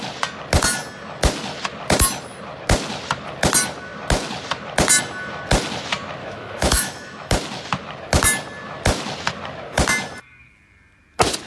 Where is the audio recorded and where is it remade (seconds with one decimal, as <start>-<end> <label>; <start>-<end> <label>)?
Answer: 0.0-6.2 recorded; 6.2-7.3 remade; 7.3-11.5 recorded